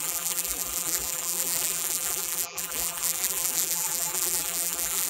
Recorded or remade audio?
remade